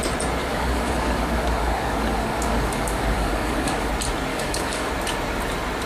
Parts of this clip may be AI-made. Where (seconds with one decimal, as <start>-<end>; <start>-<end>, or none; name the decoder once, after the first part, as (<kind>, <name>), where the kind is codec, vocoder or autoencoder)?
0.4-3.9 (codec, DAC); 4.3-4.9